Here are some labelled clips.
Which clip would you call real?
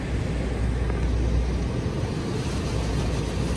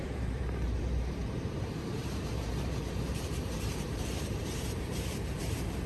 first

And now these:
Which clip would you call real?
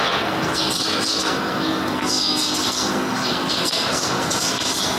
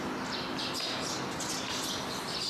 second